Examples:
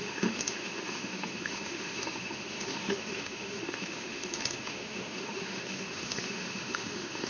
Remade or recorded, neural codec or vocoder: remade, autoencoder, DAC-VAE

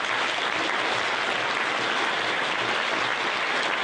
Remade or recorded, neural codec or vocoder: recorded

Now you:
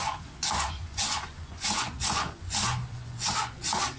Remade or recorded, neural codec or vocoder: remade, vocoder, Vocos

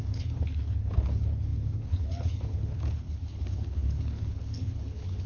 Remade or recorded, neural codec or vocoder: remade, codec, HILCodec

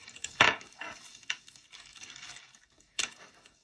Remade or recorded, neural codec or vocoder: remade, codec, DAC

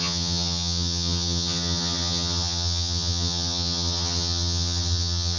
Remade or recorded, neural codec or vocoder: remade, vocoder, HiFi-GAN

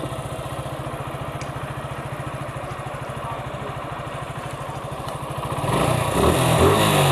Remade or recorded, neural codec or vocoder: recorded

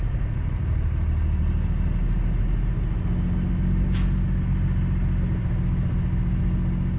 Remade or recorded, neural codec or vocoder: recorded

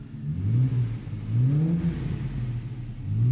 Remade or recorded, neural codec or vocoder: recorded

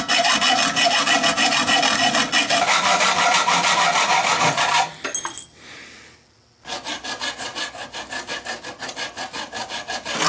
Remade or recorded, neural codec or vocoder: recorded